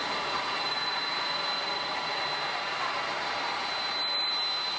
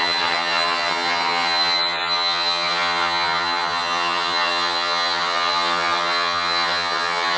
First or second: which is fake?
second